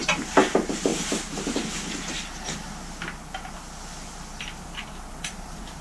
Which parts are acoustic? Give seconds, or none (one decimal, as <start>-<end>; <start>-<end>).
0.9-4.4